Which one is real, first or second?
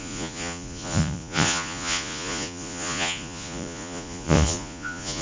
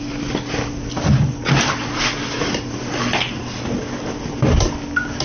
second